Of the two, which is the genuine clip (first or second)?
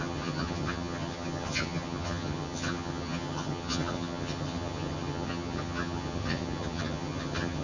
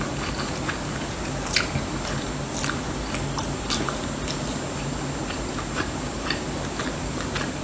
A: second